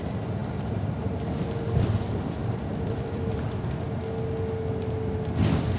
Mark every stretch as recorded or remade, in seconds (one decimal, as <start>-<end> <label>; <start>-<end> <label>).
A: 0.0-0.4 recorded; 0.4-2.0 remade; 2.0-2.4 recorded; 2.4-3.7 remade; 3.7-5.8 recorded